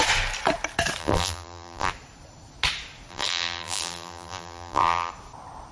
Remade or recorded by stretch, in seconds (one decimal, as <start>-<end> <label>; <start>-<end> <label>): 0.0-1.0 recorded; 1.0-1.9 remade; 1.9-3.1 recorded; 3.1-5.1 remade; 5.1-5.7 recorded